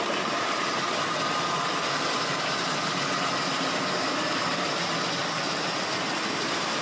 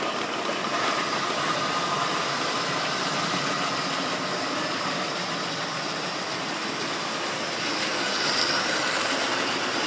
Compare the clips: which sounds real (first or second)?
first